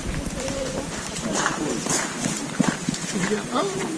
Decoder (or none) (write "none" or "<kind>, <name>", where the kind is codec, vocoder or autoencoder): vocoder, BigVGAN v2